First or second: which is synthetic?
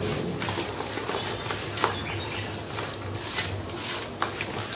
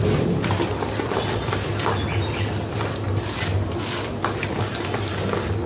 second